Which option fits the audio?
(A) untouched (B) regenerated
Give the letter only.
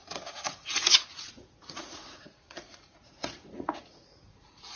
B